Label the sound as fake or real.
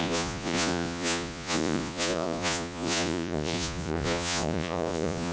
fake